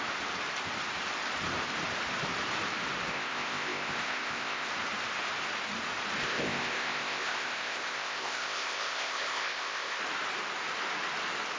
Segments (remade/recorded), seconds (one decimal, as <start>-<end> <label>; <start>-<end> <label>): 0.0-3.1 recorded; 3.1-4.7 remade; 4.7-6.2 recorded; 6.2-10.0 remade; 10.0-11.6 recorded